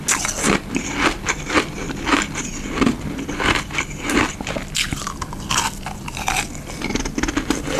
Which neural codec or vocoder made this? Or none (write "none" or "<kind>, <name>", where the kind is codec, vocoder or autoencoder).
none